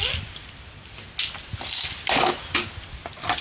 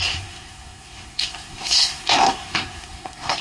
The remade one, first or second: second